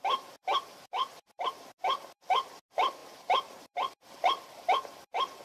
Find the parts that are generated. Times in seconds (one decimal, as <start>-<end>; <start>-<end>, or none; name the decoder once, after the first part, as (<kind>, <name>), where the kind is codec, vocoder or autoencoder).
none